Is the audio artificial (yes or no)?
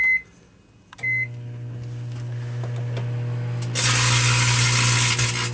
no